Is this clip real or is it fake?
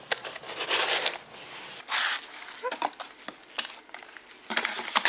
real